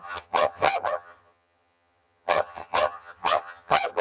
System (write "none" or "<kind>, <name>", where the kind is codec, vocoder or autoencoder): vocoder, HiFi-GAN